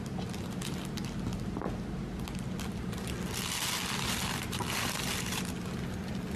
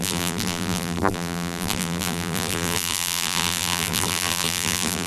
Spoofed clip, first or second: second